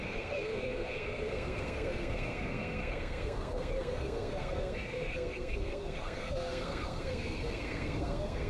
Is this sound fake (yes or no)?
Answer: yes